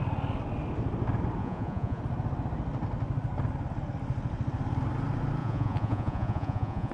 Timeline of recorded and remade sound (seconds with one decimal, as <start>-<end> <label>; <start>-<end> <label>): 0.0-1.4 recorded; 1.4-2.0 remade; 2.0-5.4 recorded; 5.4-6.9 remade